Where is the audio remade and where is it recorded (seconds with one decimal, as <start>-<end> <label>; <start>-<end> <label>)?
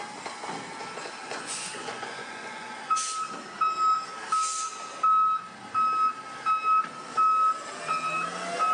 0.0-1.2 recorded; 1.2-2.9 remade; 2.9-8.7 recorded